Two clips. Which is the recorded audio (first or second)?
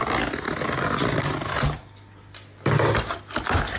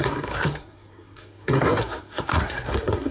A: first